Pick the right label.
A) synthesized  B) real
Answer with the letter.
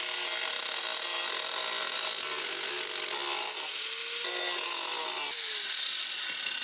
B